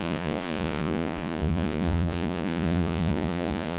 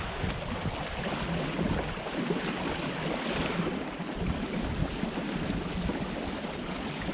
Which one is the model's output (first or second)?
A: first